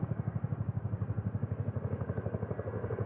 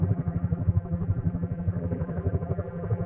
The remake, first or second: second